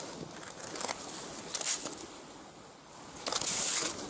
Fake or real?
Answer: real